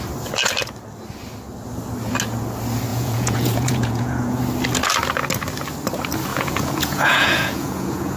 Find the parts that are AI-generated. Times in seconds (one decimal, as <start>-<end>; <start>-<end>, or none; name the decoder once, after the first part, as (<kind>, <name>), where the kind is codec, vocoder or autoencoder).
2.9-4.4 (vocoder, Vocos); 6.3-8.2